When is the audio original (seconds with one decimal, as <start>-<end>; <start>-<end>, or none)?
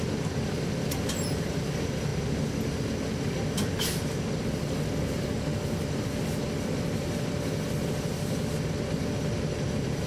0.0-10.1